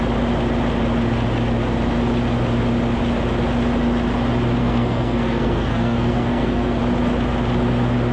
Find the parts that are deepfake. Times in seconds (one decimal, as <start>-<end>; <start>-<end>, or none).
4.6-6.8